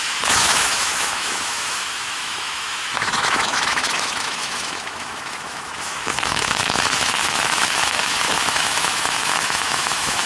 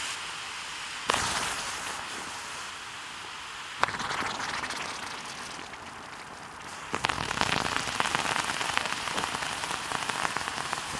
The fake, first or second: first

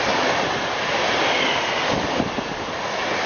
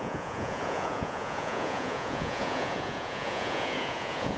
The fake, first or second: second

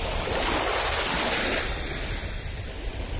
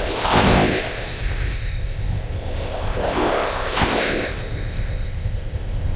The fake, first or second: second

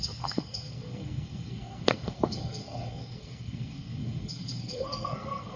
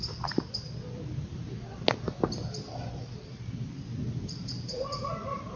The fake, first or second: first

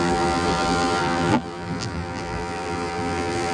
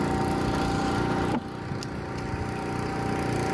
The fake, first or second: first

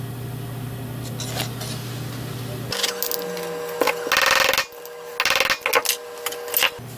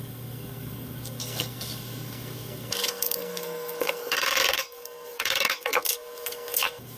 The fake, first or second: second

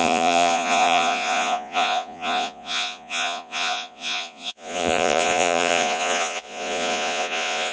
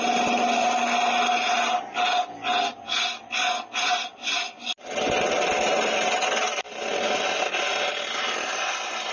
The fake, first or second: first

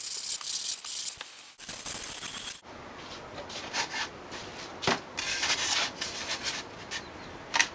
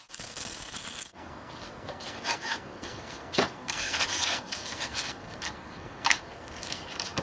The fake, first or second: second